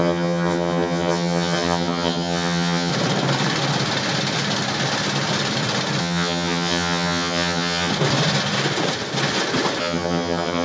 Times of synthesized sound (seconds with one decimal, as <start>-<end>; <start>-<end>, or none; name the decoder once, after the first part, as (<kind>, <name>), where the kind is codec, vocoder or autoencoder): 0.0-2.9 (vocoder, HiFi-GAN); 6.0-7.9; 9.8-10.6